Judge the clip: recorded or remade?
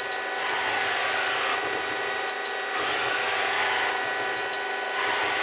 recorded